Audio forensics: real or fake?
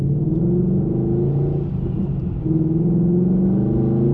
real